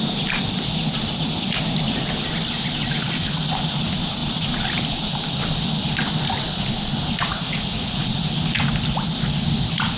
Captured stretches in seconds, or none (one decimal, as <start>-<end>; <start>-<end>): 0.0-7.4; 8.2-10.0